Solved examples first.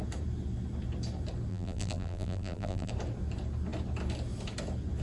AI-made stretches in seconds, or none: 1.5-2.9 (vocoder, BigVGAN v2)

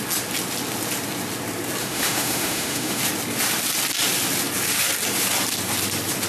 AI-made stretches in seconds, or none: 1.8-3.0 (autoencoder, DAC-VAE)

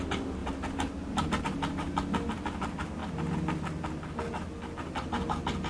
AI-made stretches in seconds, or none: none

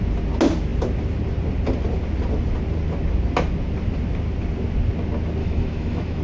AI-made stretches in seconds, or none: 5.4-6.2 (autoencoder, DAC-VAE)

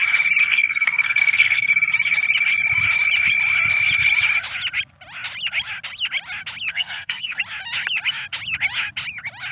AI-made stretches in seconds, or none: 0.4-1.7 (codec, SNAC); 6.7-7.4